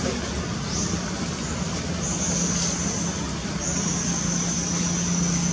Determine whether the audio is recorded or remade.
recorded